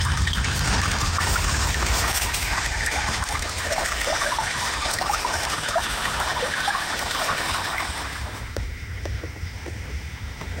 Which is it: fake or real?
fake